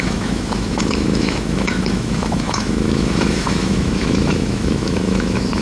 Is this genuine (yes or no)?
no